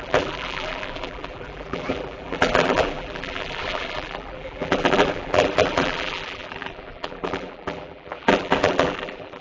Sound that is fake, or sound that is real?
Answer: fake